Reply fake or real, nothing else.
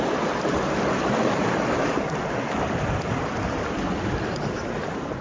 fake